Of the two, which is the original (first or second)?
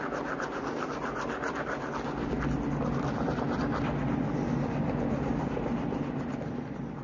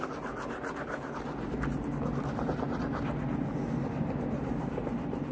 first